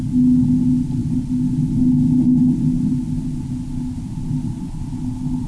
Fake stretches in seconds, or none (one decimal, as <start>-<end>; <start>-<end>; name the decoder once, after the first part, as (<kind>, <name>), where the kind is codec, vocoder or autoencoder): none